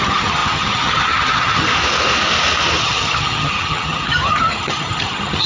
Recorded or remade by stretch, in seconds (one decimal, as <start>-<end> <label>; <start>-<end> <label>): 0.0-1.7 remade; 1.7-2.8 recorded; 2.8-5.5 remade